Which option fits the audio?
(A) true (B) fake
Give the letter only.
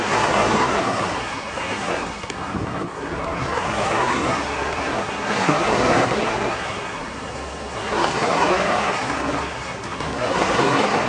B